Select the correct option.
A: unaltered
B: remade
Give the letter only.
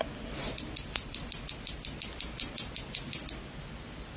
A